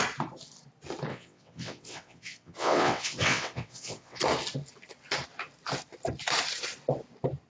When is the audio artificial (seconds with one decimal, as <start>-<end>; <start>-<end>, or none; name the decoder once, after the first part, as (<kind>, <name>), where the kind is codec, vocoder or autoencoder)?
1.1-4.2 (vocoder, WaveNeXt)